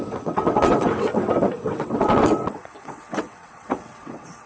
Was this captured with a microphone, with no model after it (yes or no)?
no